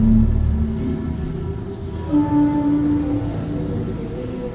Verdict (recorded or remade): recorded